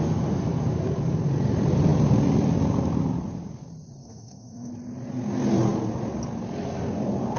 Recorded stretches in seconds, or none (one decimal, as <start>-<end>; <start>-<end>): 0.0-4.0; 4.7-7.4